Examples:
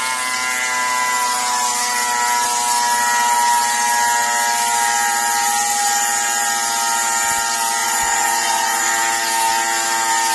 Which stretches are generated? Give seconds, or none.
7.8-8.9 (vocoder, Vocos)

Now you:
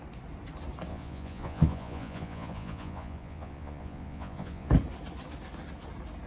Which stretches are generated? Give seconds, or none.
0.9-4.7 (vocoder, Vocos)

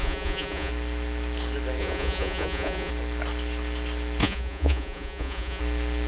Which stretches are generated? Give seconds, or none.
0.0-0.7 (vocoder, Vocos); 1.8-2.9; 4.2-5.6